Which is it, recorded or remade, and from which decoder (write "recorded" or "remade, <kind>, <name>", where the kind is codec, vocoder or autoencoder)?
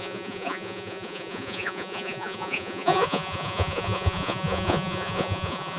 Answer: remade, vocoder, Vocos